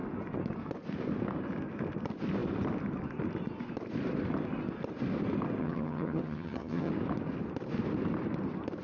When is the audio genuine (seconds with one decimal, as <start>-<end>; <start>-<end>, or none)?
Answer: 0.0-5.6; 6.9-8.8